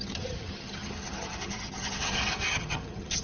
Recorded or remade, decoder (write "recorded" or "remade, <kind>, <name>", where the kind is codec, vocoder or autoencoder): remade, vocoder, HiFi-GAN